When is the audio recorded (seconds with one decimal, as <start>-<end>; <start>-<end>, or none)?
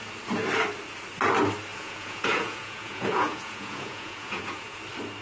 0.0-1.7; 4.8-5.2